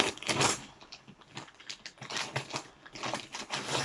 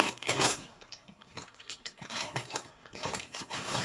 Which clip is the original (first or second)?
first